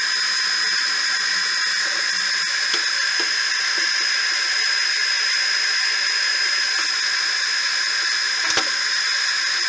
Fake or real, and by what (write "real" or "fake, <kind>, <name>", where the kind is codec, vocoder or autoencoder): real